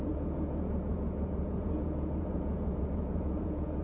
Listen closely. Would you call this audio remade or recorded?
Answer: remade